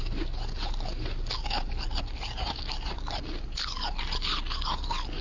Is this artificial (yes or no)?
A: no